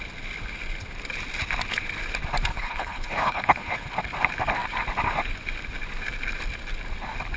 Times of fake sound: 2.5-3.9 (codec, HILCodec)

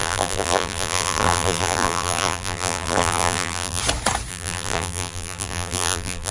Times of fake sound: 0.0-3.8 (vocoder, BigVGAN v2); 4.3-6.3

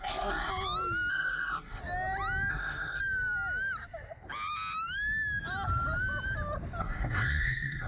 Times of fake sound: 0.0-0.5 (codec, SNAC); 1.1-1.8; 2.5-3.0; 6.8-7.9

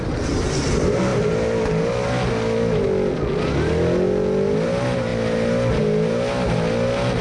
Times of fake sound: none

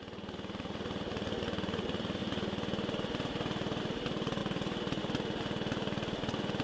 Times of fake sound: 0.0-2.2 (vocoder, BigVGAN v2); 3.8-6.6

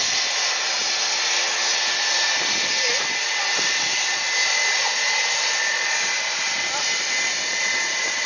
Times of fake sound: none

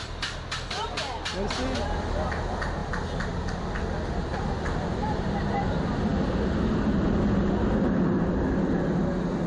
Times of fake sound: 4.3-5.2 (vocoder, BigVGAN v2)